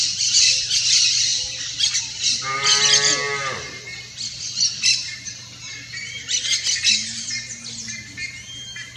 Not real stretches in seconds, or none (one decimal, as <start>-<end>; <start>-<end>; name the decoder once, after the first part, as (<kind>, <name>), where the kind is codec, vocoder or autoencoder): none